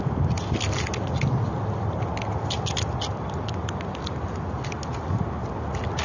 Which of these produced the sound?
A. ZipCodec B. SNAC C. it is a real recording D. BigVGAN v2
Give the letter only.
C